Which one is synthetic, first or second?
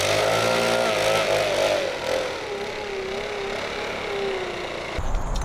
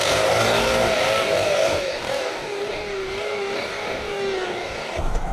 second